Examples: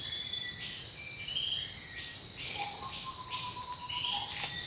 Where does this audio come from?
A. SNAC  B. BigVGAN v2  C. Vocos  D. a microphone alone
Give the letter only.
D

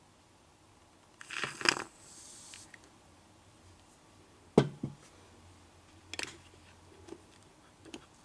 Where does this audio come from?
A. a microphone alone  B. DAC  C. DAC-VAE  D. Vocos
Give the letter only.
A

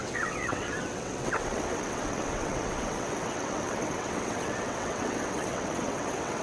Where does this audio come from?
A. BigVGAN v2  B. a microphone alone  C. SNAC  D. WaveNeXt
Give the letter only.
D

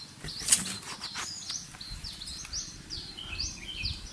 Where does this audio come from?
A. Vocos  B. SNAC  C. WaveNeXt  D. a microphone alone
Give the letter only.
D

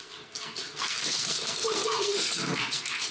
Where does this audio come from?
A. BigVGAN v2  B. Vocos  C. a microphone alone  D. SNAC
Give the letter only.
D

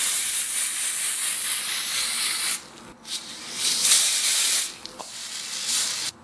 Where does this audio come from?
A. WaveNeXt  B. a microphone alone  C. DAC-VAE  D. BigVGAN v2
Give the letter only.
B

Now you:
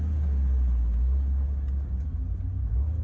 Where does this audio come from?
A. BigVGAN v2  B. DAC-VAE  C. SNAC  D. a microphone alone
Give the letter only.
D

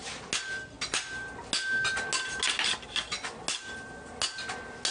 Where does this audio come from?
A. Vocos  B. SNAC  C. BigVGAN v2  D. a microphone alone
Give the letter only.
D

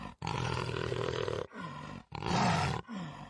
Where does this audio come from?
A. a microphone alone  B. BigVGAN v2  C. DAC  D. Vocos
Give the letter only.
A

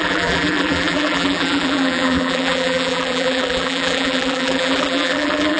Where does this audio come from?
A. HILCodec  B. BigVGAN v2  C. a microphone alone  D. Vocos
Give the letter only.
B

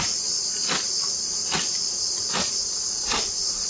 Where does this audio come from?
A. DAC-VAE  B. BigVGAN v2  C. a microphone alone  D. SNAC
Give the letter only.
C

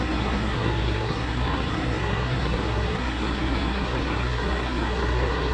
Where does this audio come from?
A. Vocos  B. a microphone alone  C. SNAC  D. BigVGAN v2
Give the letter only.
C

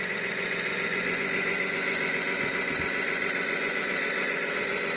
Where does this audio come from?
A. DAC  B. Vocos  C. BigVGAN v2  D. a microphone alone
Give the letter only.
B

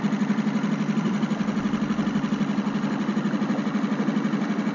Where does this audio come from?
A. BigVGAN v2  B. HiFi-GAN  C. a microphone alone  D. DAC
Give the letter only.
C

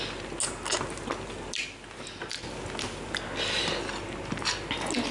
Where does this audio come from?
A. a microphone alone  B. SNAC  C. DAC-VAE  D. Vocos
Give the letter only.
A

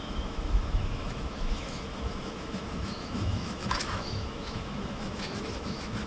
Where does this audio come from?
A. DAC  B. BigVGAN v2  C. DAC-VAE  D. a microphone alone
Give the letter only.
C